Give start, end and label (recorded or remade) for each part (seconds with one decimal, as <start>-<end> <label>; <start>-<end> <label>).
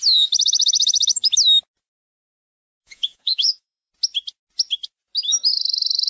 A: 0.0-2.8 recorded; 2.8-3.9 remade; 3.9-6.1 recorded